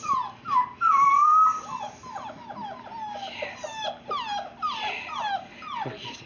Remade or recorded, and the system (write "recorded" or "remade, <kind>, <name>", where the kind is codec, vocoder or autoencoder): recorded